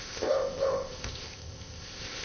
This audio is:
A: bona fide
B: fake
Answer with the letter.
B